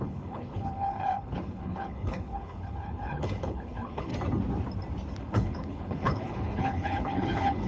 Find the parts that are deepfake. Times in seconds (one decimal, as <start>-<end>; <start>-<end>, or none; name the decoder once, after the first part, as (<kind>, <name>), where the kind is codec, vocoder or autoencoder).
0.0-4.1 (codec, HILCodec); 5.2-7.7